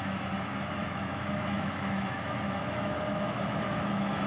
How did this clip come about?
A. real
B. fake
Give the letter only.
B